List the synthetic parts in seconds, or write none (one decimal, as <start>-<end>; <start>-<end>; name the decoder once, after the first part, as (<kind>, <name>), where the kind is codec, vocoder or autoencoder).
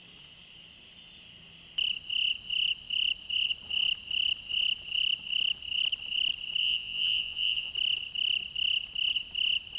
6.6-7.7 (vocoder, Vocos)